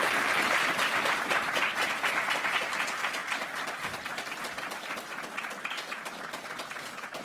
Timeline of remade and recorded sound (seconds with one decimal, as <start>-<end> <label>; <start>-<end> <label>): 0.0-3.2 remade; 3.2-4.0 recorded; 4.0-7.2 remade

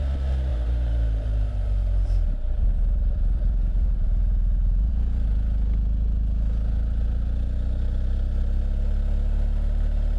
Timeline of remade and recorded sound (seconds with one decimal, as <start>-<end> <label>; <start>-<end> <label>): 0.0-0.5 recorded; 0.5-4.9 remade; 4.9-10.2 recorded

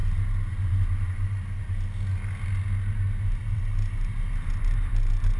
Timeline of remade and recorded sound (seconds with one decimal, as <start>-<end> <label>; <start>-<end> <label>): 0.0-5.4 recorded

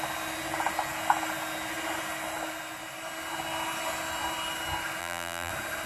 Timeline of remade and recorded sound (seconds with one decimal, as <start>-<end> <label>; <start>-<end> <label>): 0.0-5.0 recorded; 5.0-5.5 remade; 5.5-5.9 recorded

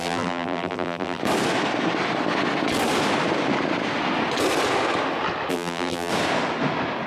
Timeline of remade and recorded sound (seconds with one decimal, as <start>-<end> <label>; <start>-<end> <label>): 0.0-1.2 remade; 1.2-5.5 recorded; 5.5-6.1 remade; 6.1-7.1 recorded

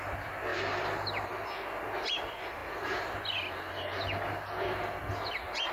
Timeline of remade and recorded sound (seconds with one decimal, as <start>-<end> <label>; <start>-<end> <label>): 0.0-5.7 recorded

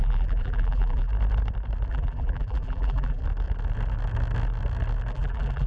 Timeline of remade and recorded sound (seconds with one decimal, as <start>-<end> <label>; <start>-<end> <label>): 0.0-1.1 remade; 1.1-1.9 recorded; 1.9-3.2 remade; 3.2-5.1 recorded; 5.1-5.7 remade